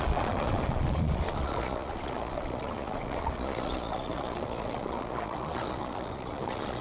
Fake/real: fake